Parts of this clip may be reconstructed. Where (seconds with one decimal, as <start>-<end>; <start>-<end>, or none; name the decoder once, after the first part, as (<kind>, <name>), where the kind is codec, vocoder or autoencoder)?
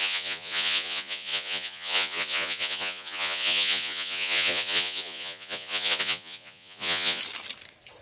0.0-7.2 (vocoder, Vocos)